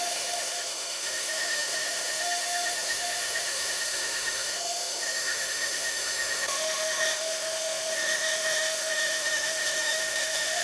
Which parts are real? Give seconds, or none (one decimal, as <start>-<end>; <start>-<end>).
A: none